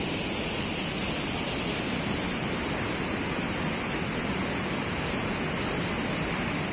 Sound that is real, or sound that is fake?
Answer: real